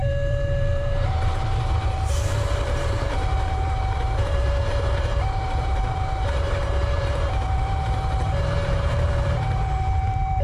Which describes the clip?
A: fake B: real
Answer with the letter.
A